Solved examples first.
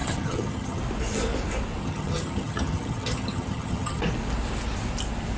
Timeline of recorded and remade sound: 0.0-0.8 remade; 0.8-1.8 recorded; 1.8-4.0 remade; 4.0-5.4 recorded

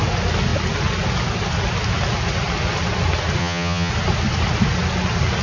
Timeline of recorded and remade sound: 0.0-3.4 recorded; 3.4-3.9 remade; 3.9-5.4 recorded

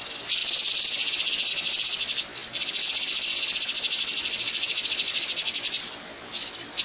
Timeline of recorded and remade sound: 0.0-6.8 recorded

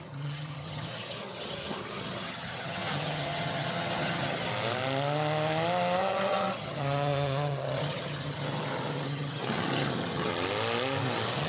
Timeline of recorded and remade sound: 0.0-4.5 remade; 4.5-6.0 recorded; 6.0-10.3 remade; 10.3-11.5 recorded

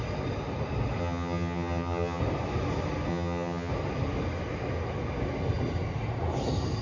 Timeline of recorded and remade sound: 0.0-1.0 recorded; 1.0-2.2 remade; 2.2-3.1 recorded; 3.1-3.7 remade; 3.7-6.8 recorded

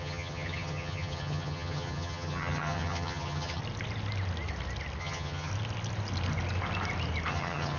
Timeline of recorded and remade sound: 0.0-3.6 remade; 3.6-5.0 recorded; 5.0-5.5 remade; 5.5-7.3 recorded; 7.3-7.8 remade

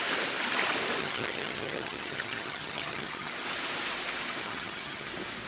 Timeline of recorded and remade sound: 0.0-1.0 recorded; 1.0-3.3 remade; 3.3-4.4 recorded; 4.4-5.1 remade; 5.1-5.5 recorded

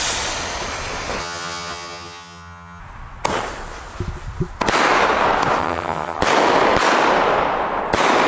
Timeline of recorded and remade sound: 0.0-1.2 recorded; 1.2-2.8 remade; 2.8-5.6 recorded; 5.6-6.2 remade; 6.2-8.3 recorded